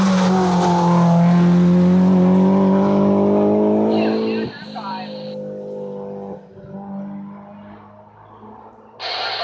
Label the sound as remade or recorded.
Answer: recorded